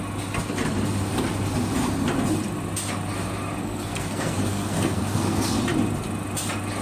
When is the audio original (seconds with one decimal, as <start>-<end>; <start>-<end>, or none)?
0.0-3.6; 5.6-6.8